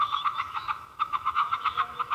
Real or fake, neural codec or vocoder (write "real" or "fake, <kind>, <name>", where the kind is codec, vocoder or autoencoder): fake, autoencoder, DAC-VAE